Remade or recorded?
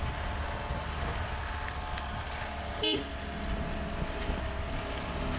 recorded